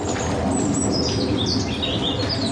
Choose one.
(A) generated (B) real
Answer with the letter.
B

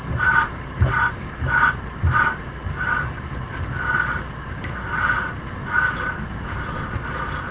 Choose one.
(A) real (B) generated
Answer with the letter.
A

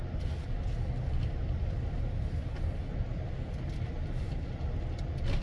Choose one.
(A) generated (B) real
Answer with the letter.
B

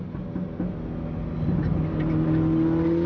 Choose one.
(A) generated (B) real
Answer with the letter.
B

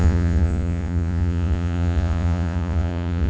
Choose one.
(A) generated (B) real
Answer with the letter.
A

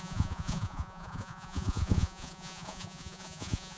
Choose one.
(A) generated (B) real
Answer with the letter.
A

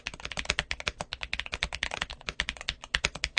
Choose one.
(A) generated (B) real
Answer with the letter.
B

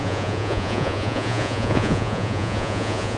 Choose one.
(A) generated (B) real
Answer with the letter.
A